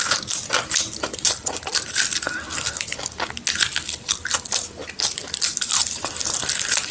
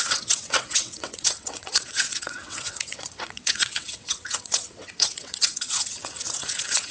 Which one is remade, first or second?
second